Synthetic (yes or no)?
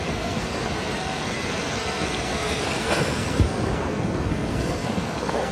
yes